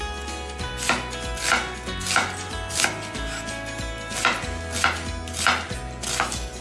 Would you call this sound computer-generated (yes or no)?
no